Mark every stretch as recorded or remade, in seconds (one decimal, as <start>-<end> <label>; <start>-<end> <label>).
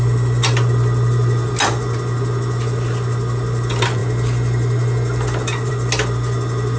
0.0-6.8 recorded